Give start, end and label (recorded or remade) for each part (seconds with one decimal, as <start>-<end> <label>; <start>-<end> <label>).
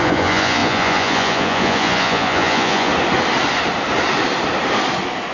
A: 0.0-2.9 remade; 2.9-5.3 recorded